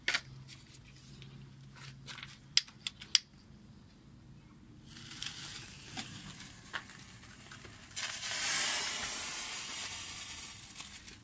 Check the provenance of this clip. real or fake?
real